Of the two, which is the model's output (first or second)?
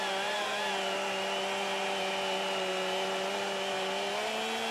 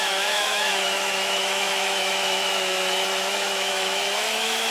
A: second